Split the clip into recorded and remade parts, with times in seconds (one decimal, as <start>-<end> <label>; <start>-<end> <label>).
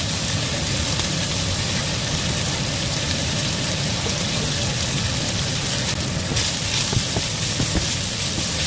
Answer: 0.0-8.7 recorded